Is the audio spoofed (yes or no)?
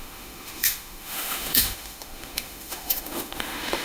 yes